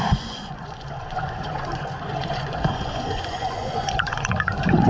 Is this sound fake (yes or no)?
yes